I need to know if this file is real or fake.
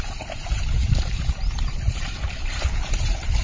fake